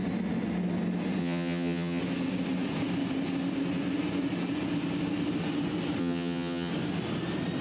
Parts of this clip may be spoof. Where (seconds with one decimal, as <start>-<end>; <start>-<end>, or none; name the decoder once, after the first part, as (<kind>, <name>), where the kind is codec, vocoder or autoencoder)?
1.2-2.0 (vocoder, HiFi-GAN); 6.0-6.7